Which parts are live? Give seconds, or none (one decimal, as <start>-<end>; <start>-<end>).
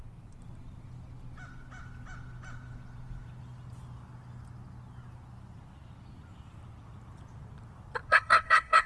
0.0-8.1